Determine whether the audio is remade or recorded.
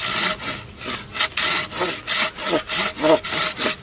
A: recorded